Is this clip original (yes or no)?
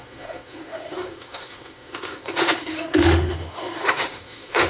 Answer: no